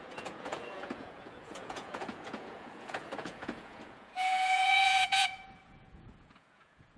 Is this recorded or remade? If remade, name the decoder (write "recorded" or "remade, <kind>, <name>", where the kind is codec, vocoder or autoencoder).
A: remade, vocoder, Vocos